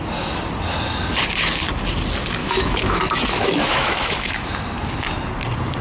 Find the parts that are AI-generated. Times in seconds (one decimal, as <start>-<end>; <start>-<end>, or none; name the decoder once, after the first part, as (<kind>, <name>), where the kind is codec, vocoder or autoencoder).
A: 2.4-4.6 (autoencoder, DAC-VAE)